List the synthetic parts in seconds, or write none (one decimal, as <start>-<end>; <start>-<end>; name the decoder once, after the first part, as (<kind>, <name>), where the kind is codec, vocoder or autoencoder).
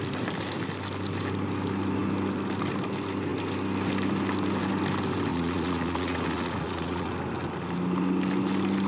5.3-7.1 (vocoder, Vocos)